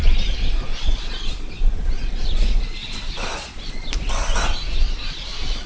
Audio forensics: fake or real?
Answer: real